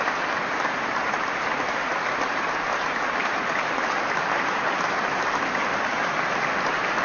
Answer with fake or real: real